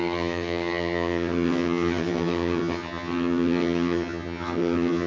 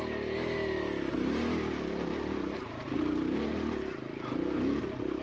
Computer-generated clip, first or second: first